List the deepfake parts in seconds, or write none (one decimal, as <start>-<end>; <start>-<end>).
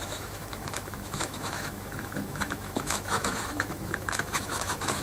0.0-5.0